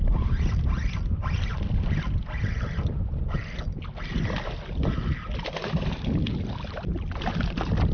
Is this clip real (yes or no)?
yes